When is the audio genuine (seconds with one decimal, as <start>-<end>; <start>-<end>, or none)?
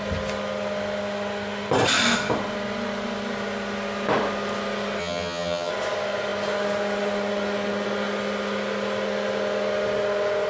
0.0-5.0; 5.7-10.5